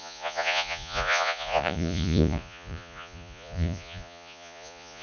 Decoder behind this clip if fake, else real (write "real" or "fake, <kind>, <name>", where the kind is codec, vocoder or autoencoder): fake, vocoder, Vocos